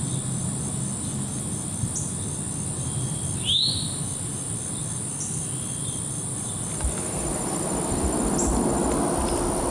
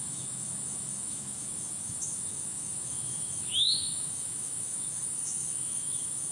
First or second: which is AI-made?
second